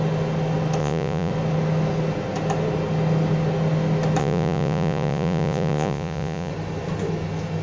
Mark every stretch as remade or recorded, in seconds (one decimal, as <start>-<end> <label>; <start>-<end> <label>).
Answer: 0.0-0.8 recorded; 0.8-1.3 remade; 1.3-4.2 recorded; 4.2-6.5 remade; 6.5-7.6 recorded